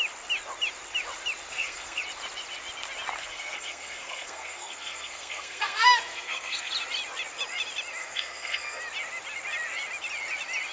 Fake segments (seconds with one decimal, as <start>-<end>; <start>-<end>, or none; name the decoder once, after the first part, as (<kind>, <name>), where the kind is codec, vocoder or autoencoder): 1.5-2.0 (codec, SNAC); 3.2-6.7; 8.0-8.8